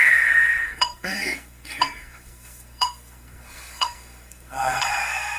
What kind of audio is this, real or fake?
fake